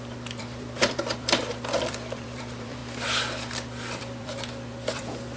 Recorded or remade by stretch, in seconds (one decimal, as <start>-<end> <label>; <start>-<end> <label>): 0.0-2.8 remade; 2.8-4.0 recorded; 4.0-5.4 remade